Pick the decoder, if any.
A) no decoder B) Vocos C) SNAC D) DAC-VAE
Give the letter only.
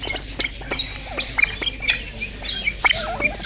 A